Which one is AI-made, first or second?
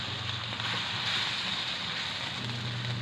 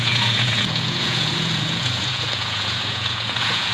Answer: second